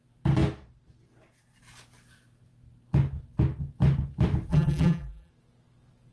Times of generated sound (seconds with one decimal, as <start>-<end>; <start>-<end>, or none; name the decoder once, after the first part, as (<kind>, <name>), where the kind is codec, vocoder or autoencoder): 4.5-5.3 (vocoder, BigVGAN v2)